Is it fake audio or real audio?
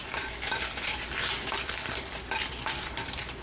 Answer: fake